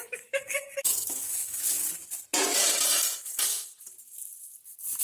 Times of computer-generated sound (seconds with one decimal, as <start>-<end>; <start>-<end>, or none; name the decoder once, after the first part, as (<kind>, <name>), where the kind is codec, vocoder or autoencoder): 0.0-1.8 (codec, DAC)